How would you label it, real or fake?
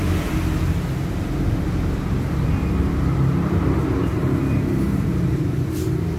fake